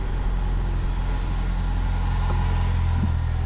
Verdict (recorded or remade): recorded